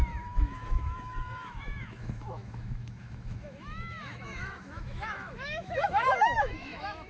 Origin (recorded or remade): remade